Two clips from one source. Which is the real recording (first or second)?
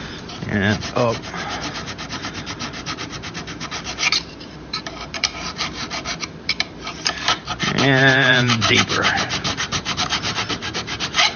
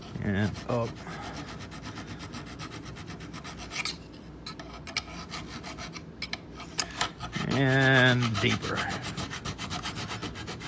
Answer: second